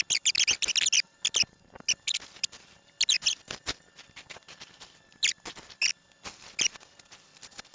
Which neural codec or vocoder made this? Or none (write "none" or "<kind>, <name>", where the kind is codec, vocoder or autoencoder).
none